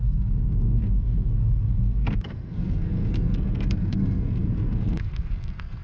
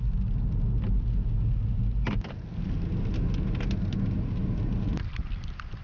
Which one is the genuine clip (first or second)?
second